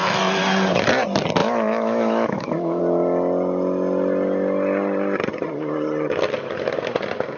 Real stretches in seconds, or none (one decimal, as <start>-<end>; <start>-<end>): 0.0-1.4; 2.8-7.4